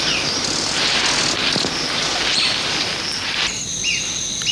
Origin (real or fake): real